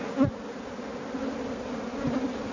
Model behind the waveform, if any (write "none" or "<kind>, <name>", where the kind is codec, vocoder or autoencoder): none